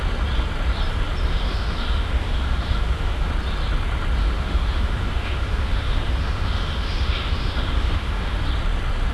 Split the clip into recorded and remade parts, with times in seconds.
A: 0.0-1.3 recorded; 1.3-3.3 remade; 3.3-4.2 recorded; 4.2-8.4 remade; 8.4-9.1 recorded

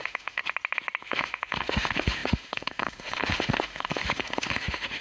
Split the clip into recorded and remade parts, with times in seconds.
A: 0.0-0.4 remade; 0.4-1.0 recorded; 1.0-5.0 remade